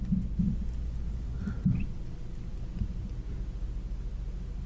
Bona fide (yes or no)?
yes